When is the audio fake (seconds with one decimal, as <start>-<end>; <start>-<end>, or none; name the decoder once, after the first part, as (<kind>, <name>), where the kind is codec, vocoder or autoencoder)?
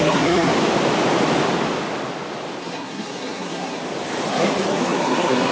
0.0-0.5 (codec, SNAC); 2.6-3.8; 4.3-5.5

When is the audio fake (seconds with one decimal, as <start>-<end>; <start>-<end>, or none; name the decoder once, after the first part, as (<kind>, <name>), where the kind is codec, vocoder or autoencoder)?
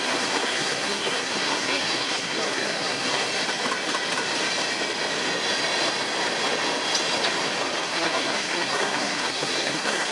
0.0-3.3 (codec, SNAC); 7.8-10.1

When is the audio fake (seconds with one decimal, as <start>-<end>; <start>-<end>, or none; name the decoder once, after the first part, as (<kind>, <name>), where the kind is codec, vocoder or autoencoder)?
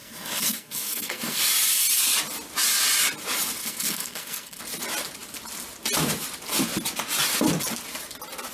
0.0-1.4 (codec, SNAC); 3.6-4.6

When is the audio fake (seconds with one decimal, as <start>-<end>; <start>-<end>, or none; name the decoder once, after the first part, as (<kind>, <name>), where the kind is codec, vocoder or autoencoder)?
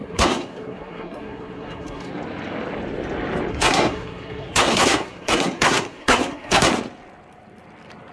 0.0-2.1 (codec, SNAC); 3.5-6.7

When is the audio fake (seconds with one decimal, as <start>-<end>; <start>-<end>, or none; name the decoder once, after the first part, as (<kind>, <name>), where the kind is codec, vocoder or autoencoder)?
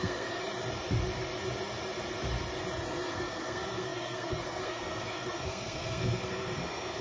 0.0-0.4 (codec, SNAC); 3.1-7.0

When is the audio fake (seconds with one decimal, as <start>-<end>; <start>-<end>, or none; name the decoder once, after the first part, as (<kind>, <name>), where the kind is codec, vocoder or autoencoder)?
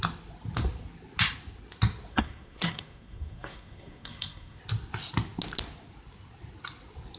2.1-4.6 (codec, SNAC)